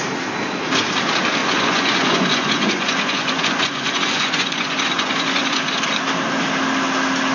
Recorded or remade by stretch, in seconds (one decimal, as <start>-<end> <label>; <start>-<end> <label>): 0.0-1.4 recorded; 1.4-5.8 remade; 5.8-7.3 recorded